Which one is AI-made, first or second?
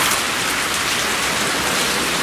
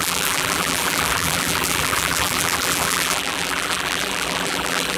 second